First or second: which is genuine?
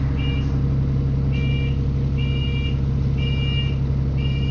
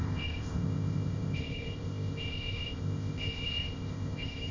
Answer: first